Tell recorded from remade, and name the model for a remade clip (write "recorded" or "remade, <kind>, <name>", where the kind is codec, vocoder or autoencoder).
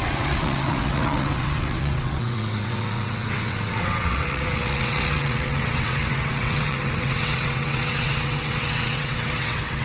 remade, vocoder, WaveNeXt